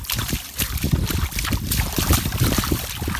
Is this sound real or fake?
fake